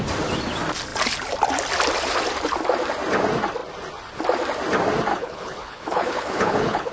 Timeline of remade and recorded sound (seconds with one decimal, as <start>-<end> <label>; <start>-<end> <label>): 0.0-5.1 recorded; 5.1-6.9 remade